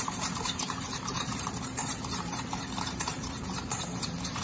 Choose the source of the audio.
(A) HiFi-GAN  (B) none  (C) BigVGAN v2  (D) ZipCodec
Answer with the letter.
C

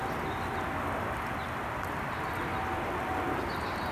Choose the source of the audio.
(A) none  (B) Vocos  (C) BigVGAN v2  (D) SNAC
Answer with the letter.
A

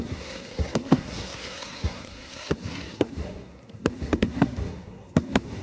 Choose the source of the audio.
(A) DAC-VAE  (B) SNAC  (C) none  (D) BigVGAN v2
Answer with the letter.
B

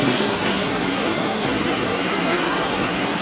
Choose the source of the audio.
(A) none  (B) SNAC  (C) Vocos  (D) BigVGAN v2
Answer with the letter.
B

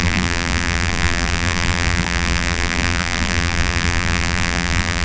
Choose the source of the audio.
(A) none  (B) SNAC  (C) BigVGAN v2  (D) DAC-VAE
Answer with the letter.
C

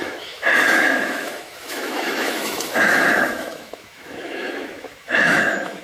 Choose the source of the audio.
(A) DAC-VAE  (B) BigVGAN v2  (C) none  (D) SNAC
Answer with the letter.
A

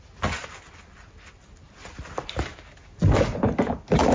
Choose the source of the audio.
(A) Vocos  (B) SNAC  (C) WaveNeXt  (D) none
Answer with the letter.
D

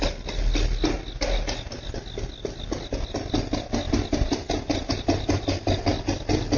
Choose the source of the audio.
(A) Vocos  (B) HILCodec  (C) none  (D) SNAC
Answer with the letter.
C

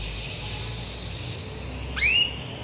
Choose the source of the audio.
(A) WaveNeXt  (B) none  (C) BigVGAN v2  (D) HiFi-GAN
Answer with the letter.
B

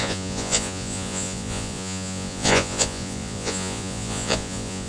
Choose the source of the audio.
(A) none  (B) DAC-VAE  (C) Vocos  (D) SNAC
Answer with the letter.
C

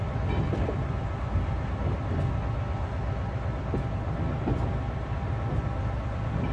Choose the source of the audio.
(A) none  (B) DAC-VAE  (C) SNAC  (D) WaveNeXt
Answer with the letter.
A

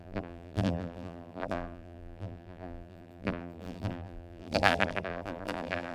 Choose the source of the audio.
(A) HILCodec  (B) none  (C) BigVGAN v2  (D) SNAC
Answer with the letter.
C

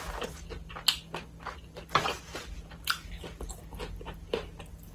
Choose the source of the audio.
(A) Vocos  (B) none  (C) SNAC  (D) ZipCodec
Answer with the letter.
B